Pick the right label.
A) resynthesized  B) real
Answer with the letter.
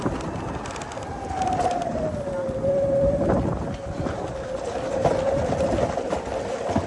B